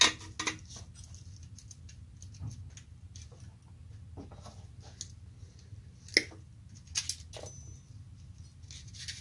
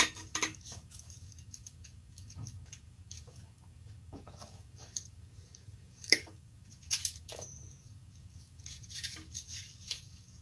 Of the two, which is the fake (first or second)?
second